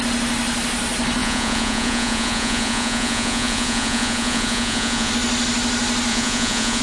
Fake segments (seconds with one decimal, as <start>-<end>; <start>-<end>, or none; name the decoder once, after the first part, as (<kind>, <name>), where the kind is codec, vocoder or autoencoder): 1.2-5.1 (vocoder, Vocos); 6.1-6.8

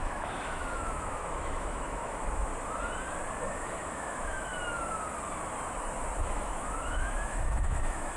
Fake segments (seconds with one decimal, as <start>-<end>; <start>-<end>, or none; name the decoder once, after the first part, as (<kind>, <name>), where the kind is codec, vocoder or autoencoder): 0.0-2.5 (autoencoder, DAC-VAE); 3.4-4.5; 6.2-8.2

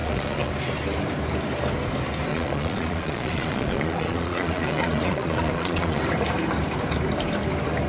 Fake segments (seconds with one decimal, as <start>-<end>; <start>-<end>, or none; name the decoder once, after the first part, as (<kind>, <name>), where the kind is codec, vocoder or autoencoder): 0.0-0.5 (vocoder, Vocos); 2.3-6.0

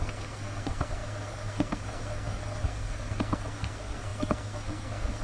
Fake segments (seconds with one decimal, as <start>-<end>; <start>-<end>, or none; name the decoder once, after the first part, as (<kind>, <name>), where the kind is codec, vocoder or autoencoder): 0.0-5.2 (codec, SNAC)

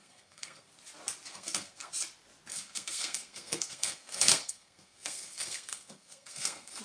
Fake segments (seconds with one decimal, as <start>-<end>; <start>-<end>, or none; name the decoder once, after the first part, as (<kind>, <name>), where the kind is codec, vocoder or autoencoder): 0.0-0.7 (codec, SNAC); 1.3-1.9; 2.5-6.8

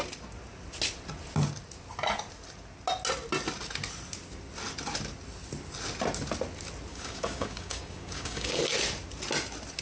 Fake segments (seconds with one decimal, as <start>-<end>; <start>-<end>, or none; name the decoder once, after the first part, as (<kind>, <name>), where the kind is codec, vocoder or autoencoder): 6.9-8.6 (codec, DAC)

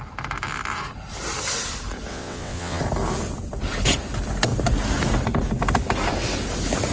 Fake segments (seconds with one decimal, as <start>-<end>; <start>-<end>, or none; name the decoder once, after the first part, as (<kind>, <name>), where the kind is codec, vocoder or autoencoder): 2.1-2.8 (vocoder, WaveNeXt)

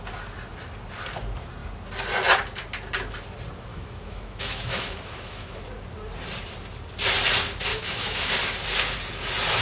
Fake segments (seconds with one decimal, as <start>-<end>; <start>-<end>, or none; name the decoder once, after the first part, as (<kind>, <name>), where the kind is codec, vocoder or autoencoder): 3.7-5.6 (autoencoder, DAC-VAE); 7.7-8.3